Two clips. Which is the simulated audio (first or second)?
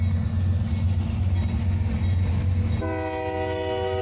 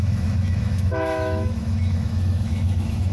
second